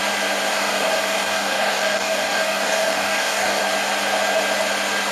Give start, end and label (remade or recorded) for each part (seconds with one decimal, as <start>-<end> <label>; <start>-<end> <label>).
0.0-0.5 recorded; 0.5-3.6 remade; 3.6-5.1 recorded